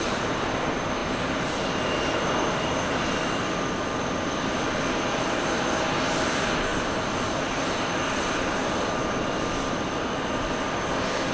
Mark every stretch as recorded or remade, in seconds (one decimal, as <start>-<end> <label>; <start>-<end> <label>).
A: 0.0-11.3 recorded